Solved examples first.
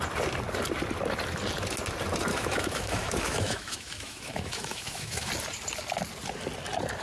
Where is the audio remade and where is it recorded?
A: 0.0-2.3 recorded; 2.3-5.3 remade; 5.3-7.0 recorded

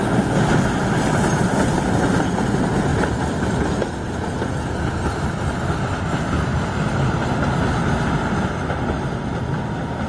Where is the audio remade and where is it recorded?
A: 0.0-2.9 recorded; 2.9-3.7 remade; 3.7-10.1 recorded

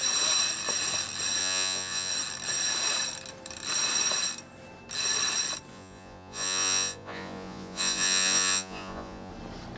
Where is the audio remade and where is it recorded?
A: 0.0-1.4 recorded; 1.4-2.1 remade; 2.1-5.7 recorded; 5.7-9.3 remade; 9.3-9.8 recorded

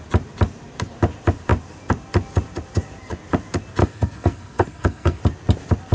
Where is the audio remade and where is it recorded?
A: 0.0-3.8 recorded; 3.8-5.2 remade; 5.2-5.9 recorded

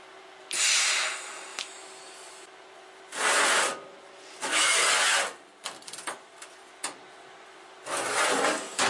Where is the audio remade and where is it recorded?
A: 0.0-8.9 recorded